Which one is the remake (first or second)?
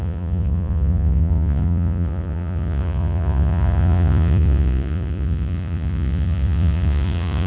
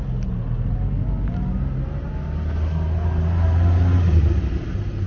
first